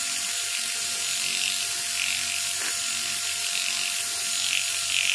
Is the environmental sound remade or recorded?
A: recorded